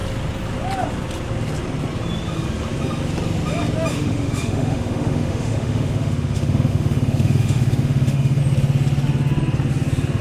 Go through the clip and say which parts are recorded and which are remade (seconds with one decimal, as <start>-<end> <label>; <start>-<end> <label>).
0.0-3.9 recorded; 3.9-8.4 remade; 8.4-10.2 recorded